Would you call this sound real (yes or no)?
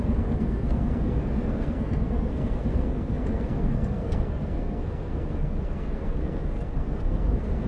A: no